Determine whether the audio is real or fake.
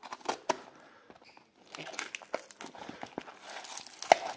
real